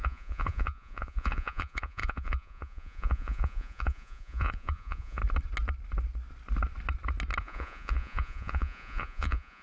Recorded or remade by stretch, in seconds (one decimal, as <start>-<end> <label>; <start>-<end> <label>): 0.0-5.2 remade; 5.2-7.4 recorded; 7.4-9.6 remade

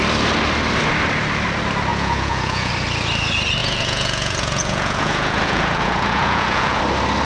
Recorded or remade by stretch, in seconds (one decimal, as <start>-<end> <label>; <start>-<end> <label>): 0.0-1.9 recorded; 1.9-2.7 remade; 2.7-3.6 recorded; 3.6-6.8 remade; 6.8-7.2 recorded

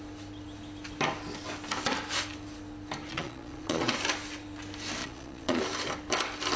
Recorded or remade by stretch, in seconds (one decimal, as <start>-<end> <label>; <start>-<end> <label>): 0.0-3.1 recorded; 3.1-3.9 remade; 3.9-5.0 recorded; 5.0-5.6 remade; 5.6-6.6 recorded